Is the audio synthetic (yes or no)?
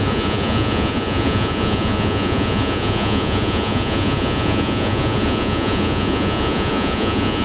yes